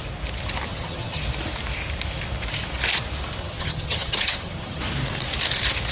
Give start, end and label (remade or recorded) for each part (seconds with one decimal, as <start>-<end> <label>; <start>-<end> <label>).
0.0-0.7 recorded; 0.7-1.2 remade; 1.2-3.4 recorded; 3.4-4.8 remade; 4.8-5.9 recorded